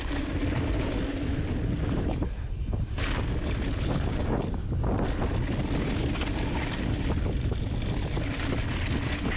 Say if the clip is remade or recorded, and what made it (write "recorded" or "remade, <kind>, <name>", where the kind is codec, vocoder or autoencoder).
recorded